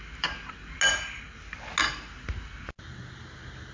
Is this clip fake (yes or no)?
no